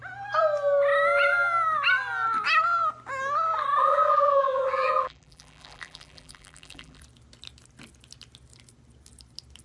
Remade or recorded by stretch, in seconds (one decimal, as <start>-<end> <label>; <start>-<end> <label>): 0.0-3.8 recorded; 3.8-7.0 remade; 7.0-9.6 recorded